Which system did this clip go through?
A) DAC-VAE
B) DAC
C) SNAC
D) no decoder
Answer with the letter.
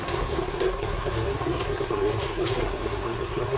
C